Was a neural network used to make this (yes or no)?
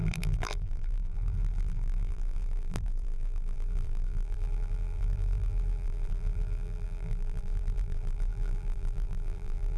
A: yes